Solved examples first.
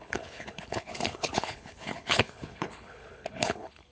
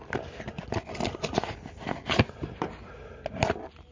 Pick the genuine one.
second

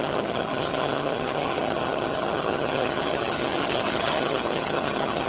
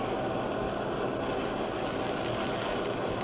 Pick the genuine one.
second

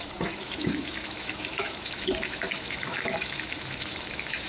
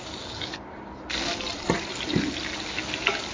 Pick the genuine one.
second